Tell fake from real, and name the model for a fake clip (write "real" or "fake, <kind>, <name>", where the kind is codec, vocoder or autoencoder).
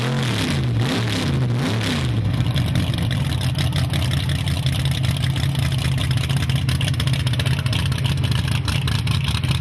real